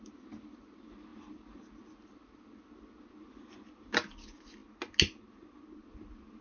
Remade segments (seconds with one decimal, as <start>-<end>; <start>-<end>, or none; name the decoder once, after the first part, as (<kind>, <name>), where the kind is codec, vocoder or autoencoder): none